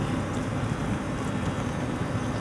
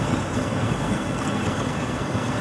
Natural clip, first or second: first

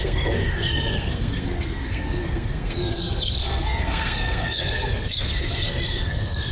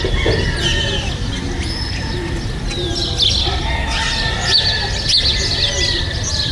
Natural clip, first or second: second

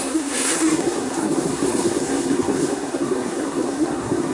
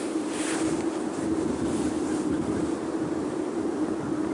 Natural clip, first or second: second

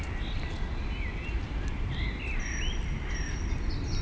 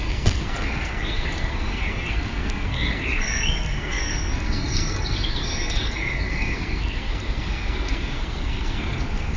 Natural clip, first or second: first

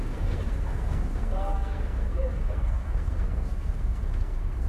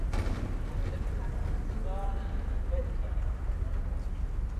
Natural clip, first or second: second